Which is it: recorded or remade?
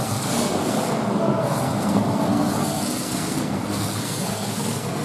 remade